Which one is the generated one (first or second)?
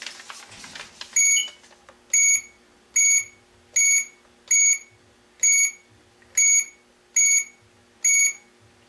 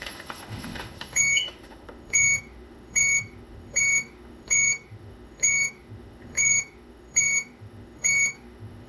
second